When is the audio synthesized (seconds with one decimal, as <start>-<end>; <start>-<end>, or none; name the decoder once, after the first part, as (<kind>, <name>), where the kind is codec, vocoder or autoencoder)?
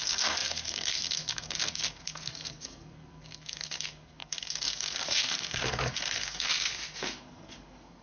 0.0-8.0 (codec, SNAC)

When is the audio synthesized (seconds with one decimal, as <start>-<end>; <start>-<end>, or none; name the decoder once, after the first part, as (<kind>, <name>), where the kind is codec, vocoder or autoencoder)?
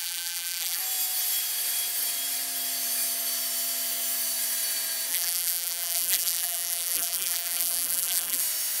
0.0-0.8 (vocoder, BigVGAN v2); 5.1-8.4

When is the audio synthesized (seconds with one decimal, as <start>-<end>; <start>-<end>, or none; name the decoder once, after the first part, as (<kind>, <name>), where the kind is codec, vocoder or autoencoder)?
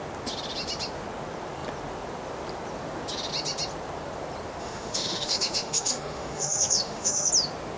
4.6-7.3 (autoencoder, DAC-VAE)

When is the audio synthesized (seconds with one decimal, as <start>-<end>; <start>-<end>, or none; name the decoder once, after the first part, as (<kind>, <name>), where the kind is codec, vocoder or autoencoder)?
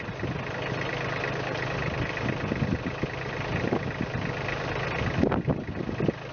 none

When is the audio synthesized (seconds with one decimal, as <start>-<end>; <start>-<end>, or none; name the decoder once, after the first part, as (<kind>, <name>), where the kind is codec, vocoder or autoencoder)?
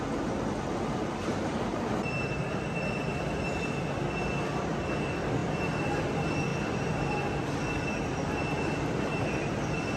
1.2-2.4 (vocoder, BigVGAN v2)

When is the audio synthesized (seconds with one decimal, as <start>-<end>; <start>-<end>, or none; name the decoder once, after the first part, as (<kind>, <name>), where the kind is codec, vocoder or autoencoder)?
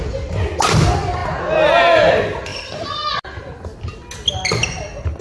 none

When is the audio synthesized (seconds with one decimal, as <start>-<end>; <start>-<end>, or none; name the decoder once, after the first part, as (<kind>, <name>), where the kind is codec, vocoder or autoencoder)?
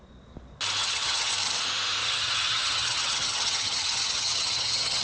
0.8-1.3 (vocoder, HiFi-GAN); 2.0-5.0